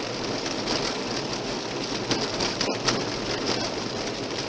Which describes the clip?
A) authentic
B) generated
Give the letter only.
A